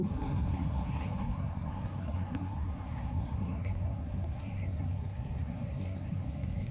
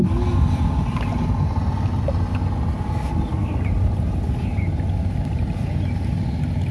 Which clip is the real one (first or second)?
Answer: second